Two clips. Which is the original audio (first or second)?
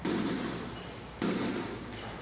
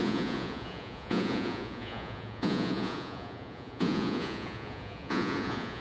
first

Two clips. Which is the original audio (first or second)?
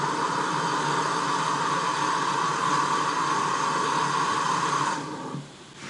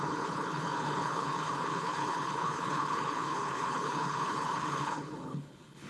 first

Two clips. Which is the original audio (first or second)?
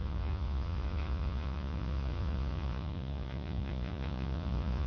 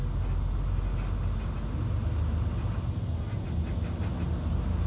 second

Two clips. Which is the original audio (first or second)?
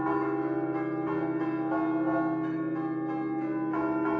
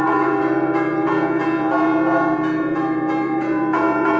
first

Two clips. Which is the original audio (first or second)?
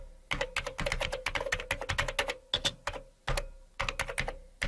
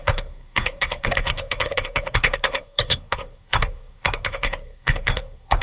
first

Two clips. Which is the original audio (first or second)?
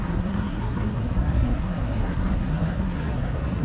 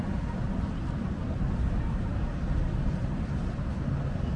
second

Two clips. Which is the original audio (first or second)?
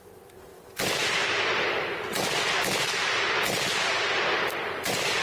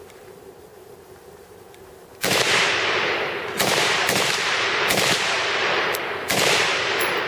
first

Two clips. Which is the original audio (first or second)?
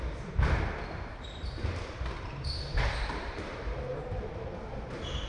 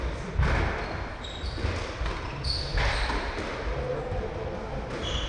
second